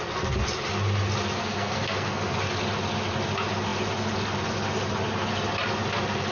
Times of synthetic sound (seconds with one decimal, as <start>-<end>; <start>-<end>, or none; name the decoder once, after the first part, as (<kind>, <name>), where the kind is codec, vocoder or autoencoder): 1.4-2.4 (codec, SNAC)